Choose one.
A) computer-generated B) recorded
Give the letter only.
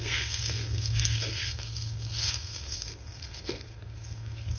A